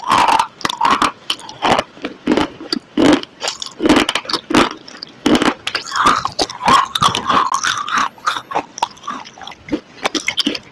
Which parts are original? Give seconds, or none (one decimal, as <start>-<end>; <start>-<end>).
0.0-8.0; 8.6-10.7